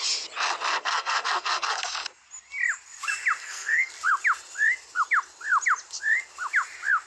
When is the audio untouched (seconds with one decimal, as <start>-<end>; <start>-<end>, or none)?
0.0-0.7; 1.8-3.4; 3.9-7.1